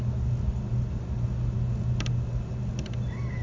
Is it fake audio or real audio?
real